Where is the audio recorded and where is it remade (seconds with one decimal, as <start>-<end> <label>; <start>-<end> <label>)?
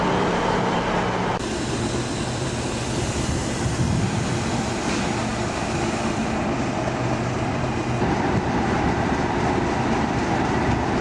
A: 0.0-11.0 remade